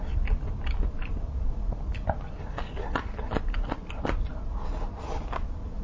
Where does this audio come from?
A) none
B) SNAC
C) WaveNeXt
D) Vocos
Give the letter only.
A